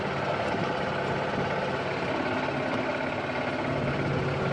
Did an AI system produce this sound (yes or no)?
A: no